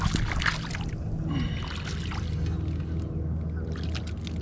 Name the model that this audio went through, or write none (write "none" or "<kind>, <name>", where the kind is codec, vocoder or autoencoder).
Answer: none